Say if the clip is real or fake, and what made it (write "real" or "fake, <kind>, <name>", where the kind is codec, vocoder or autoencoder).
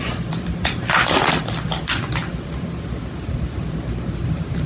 fake, vocoder, BigVGAN v2